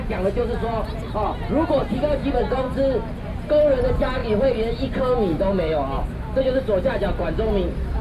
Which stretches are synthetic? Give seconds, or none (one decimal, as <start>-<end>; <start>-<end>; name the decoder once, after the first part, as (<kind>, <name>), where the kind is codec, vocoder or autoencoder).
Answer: none